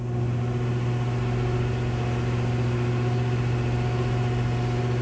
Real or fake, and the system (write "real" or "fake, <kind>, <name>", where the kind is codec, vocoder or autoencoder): real